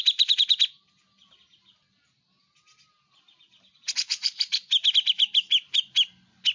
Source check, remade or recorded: recorded